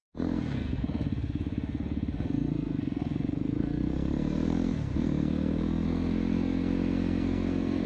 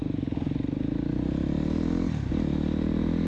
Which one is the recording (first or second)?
second